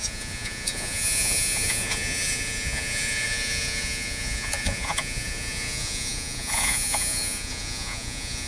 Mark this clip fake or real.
fake